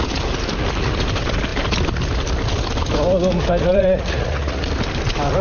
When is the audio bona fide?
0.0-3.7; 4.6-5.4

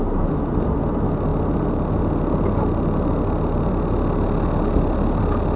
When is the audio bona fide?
0.0-5.6

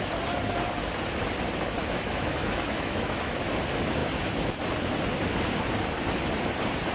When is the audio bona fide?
0.0-1.8; 3.6-6.9

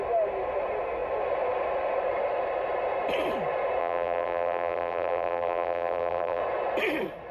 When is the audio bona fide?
0.0-3.8; 6.4-7.3

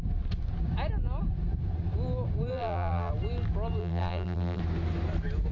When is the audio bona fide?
0.0-2.5; 3.1-3.8; 4.6-5.5

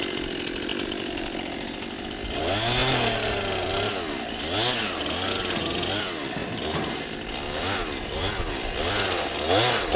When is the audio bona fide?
0.0-10.0